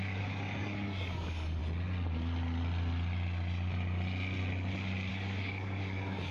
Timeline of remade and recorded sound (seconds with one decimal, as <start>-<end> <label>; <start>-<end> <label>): 0.0-1.6 remade; 1.6-5.1 recorded; 5.1-6.3 remade